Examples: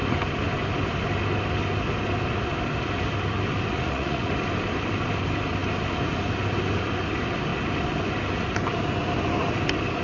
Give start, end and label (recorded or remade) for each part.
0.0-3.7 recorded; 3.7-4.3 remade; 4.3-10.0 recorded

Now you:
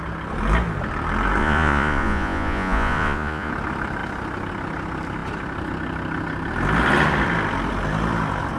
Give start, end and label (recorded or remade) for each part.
0.0-1.4 recorded; 1.4-3.5 remade; 3.5-8.6 recorded

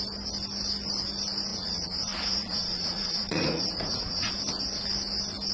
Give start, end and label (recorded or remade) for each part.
0.0-1.5 recorded; 1.5-4.3 remade; 4.3-5.5 recorded

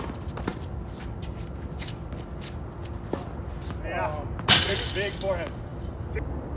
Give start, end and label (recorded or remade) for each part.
0.0-6.6 recorded

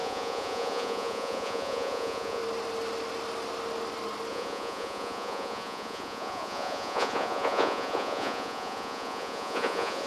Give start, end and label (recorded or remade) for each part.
0.0-2.4 remade; 2.4-4.3 recorded; 4.3-10.1 remade

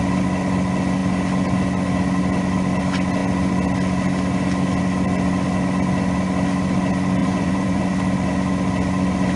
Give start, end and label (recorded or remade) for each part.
0.0-7.2 recorded; 7.2-7.8 remade; 7.8-9.4 recorded